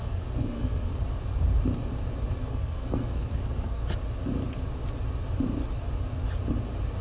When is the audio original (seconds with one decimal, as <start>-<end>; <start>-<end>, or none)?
0.9-2.5; 3.8-7.0